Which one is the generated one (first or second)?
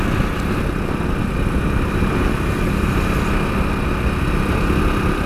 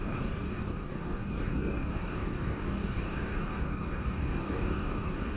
second